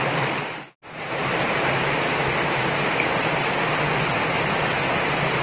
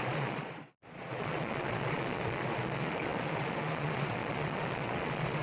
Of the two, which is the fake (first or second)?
second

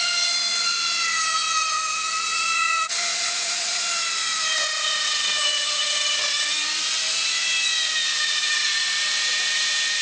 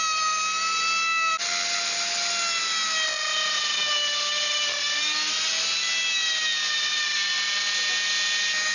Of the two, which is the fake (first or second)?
first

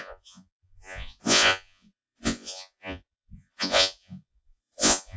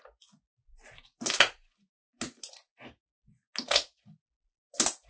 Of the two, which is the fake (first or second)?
first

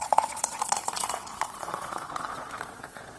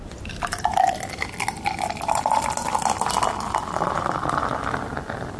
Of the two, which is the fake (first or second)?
first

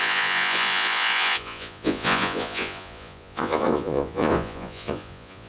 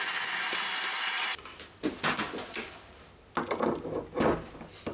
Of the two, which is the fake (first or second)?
first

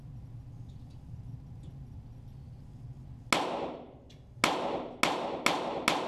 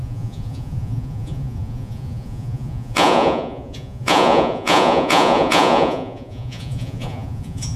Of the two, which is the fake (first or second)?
second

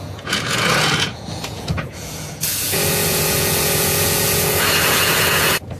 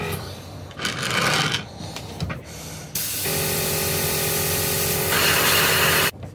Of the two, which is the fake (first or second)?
first